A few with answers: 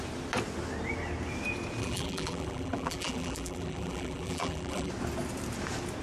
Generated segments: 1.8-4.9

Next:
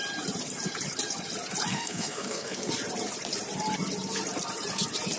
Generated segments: 1.7-2.7